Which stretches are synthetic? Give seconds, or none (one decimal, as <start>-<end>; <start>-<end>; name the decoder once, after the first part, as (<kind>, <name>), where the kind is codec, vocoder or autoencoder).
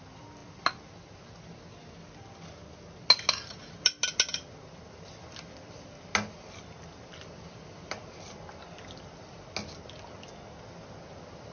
none